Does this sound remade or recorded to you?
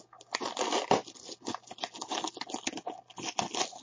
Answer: recorded